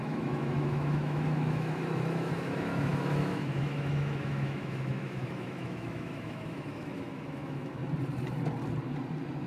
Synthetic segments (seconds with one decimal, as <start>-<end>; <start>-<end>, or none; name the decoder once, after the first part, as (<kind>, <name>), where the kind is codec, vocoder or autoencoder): 0.0-7.8 (autoencoder, DAC-VAE)